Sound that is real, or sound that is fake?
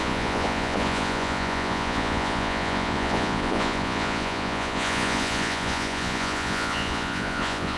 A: fake